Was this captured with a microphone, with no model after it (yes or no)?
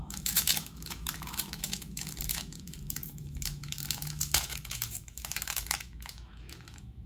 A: no